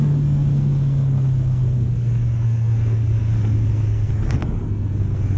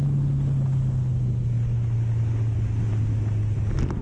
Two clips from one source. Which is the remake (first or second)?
first